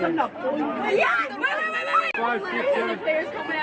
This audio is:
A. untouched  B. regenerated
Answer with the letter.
A